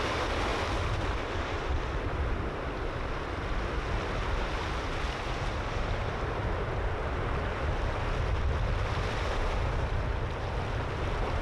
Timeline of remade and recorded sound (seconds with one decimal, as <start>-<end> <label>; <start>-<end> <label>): 0.0-11.4 recorded